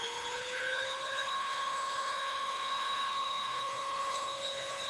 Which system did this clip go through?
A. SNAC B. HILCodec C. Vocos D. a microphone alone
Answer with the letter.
B